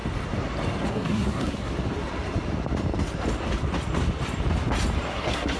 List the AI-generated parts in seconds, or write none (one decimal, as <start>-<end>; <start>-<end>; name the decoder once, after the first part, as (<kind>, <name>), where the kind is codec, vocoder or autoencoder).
0.9-1.7 (codec, SNAC); 5.1-5.6